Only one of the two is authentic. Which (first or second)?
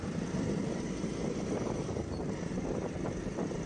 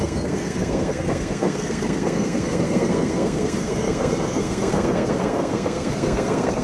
first